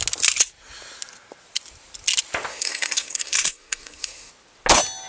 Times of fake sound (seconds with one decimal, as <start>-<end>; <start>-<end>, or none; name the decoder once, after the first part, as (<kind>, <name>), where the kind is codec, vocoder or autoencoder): 2.5-4.3 (codec, SNAC)